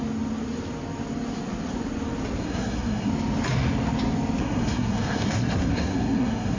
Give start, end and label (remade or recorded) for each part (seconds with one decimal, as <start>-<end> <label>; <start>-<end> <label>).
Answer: 0.0-2.4 recorded; 2.4-3.1 remade; 3.1-4.4 recorded; 4.4-6.6 remade